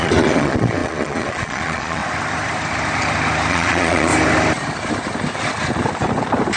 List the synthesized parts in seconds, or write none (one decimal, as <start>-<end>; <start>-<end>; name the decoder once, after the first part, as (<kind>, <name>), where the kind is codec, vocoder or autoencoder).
0.0-2.0 (vocoder, Vocos); 3.5-4.1